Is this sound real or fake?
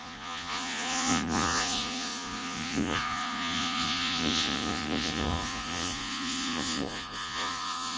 fake